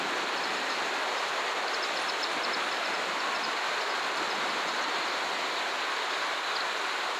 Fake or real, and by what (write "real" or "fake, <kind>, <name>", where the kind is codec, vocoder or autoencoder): real